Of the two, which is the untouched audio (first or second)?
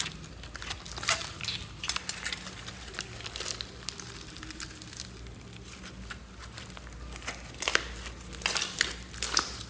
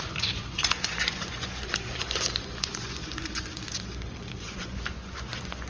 first